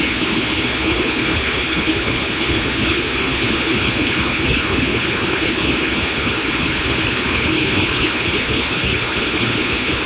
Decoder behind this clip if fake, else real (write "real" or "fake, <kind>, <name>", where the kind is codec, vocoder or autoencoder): fake, codec, HILCodec